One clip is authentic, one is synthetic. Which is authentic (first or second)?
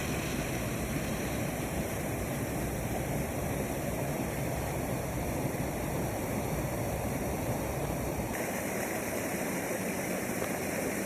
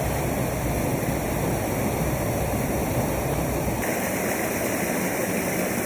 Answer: second